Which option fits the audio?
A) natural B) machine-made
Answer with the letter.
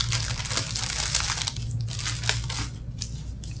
A